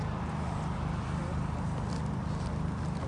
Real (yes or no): yes